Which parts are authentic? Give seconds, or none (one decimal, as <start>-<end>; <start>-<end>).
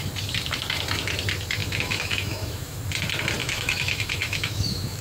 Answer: 0.0-1.6; 2.8-3.4